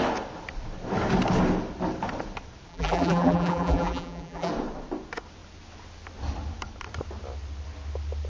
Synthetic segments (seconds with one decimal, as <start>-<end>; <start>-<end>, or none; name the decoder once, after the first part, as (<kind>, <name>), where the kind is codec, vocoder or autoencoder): 2.7-4.5 (vocoder, BigVGAN v2)